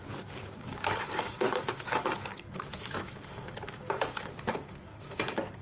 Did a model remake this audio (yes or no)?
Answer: yes